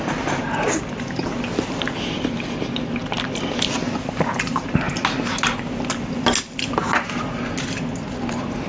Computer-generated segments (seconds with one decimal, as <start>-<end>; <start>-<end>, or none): none